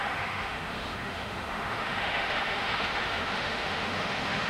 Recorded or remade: remade